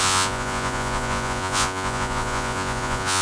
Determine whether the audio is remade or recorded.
remade